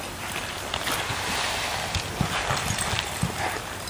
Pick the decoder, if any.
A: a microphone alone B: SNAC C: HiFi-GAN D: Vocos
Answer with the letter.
A